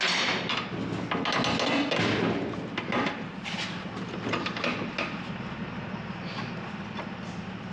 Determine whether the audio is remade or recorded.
recorded